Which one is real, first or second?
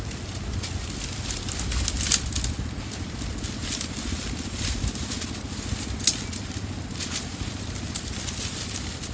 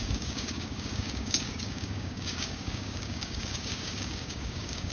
first